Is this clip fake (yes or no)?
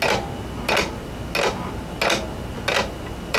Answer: no